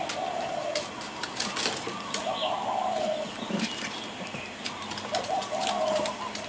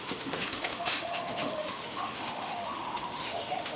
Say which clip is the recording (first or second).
first